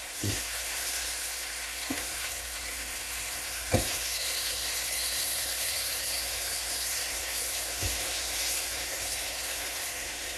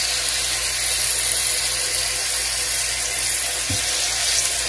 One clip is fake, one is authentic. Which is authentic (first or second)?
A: second